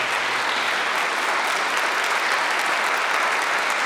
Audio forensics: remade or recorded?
recorded